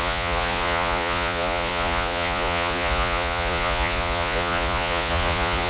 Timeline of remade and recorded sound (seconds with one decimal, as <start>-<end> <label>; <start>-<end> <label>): 0.0-5.7 remade